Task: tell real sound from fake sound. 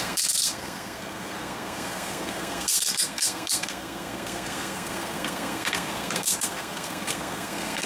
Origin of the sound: fake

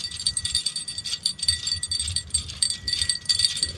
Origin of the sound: fake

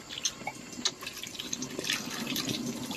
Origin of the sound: real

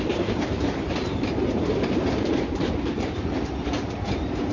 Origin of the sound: fake